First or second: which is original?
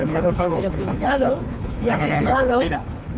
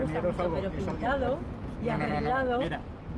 second